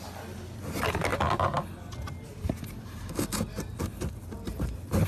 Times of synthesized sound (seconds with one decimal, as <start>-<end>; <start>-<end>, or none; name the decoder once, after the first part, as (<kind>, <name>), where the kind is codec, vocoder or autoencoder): none